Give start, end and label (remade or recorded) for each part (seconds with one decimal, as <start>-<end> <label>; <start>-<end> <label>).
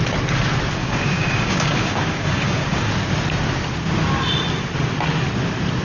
0.0-0.8 recorded; 0.8-2.9 remade; 2.9-5.8 recorded